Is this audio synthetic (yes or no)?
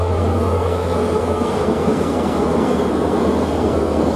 yes